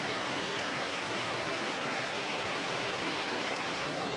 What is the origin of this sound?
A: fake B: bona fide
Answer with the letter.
A